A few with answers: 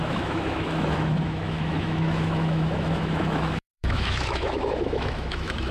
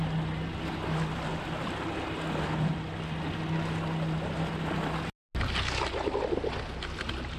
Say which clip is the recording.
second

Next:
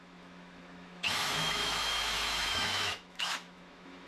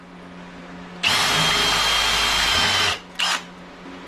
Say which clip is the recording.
second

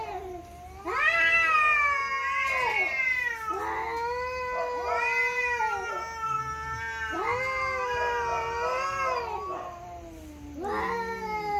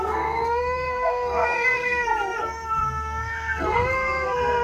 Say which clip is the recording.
first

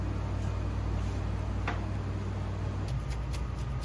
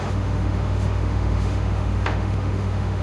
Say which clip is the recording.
first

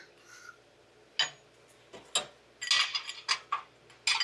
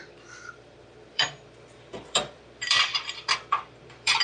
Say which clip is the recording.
first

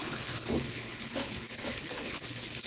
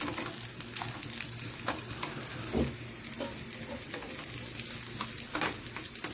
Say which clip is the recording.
second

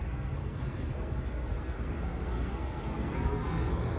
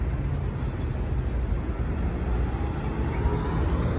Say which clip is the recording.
second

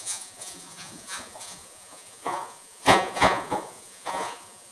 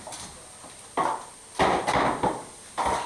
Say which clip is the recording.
second